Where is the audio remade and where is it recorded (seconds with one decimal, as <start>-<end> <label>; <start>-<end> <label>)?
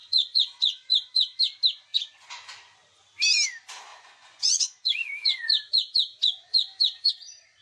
0.0-1.4 remade; 1.4-1.9 recorded; 1.9-2.5 remade; 2.5-3.9 recorded; 3.9-7.1 remade; 7.1-7.6 recorded